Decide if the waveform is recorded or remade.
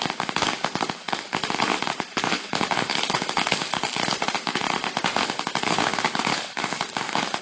remade